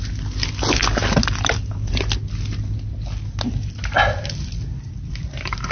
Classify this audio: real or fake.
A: real